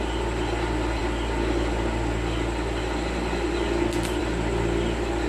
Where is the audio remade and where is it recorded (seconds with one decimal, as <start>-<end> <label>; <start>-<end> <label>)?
0.0-5.3 recorded